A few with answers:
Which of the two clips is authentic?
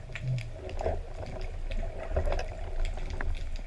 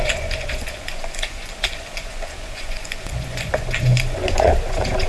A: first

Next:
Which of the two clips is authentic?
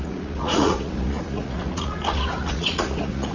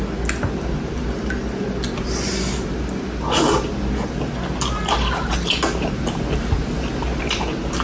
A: second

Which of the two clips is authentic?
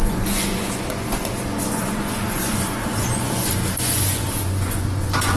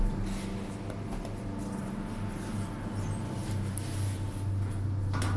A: second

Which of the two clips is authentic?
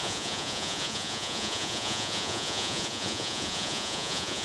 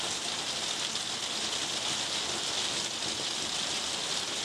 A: second